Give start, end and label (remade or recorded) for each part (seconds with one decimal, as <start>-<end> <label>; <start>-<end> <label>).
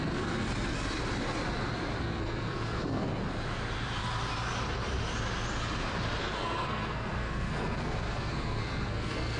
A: 0.0-0.5 remade; 0.5-2.0 recorded; 2.0-3.2 remade; 3.2-6.2 recorded; 6.2-9.4 remade